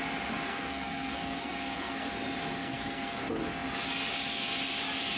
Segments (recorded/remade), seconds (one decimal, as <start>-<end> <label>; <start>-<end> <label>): 0.0-0.5 recorded; 0.5-2.1 remade; 2.1-2.6 recorded; 2.6-3.2 remade; 3.2-5.2 recorded